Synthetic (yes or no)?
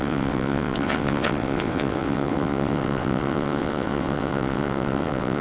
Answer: yes